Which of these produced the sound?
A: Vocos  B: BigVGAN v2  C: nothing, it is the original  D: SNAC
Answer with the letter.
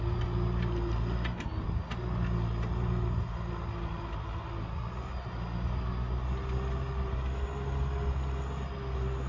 C